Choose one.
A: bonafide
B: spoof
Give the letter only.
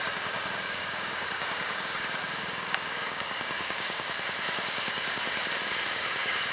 B